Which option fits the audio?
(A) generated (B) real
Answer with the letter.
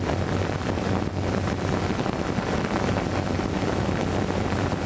B